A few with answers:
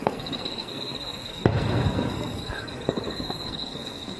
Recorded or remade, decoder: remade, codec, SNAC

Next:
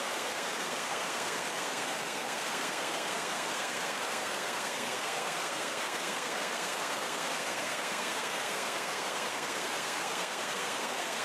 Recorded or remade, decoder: remade, codec, SNAC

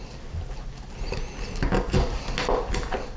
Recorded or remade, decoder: recorded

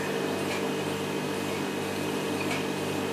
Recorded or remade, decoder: recorded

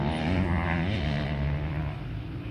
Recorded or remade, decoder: recorded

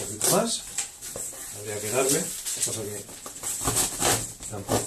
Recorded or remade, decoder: recorded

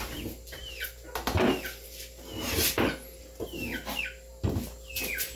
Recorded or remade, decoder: recorded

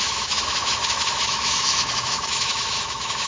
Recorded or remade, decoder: remade, autoencoder, DAC-VAE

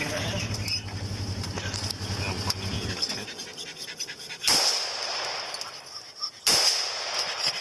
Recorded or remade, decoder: recorded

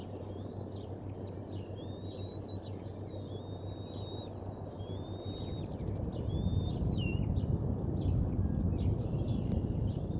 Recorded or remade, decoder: recorded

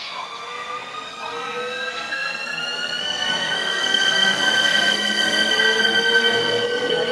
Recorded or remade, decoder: remade, codec, SNAC